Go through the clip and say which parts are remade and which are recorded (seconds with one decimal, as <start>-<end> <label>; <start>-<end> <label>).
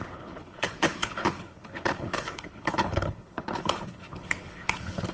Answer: 0.0-5.1 remade